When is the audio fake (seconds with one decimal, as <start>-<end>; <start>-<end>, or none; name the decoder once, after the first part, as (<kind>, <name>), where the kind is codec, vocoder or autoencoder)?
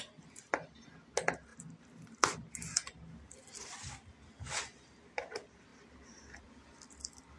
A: 5.7-7.4 (vocoder, BigVGAN v2)